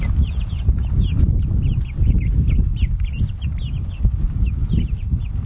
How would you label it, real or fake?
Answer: fake